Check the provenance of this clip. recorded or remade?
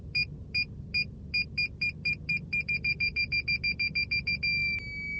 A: recorded